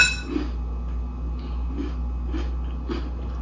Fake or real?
real